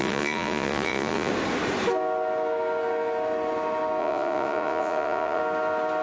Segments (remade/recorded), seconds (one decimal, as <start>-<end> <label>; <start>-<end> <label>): 0.0-1.3 remade; 1.3-4.0 recorded; 4.0-5.4 remade; 5.4-6.0 recorded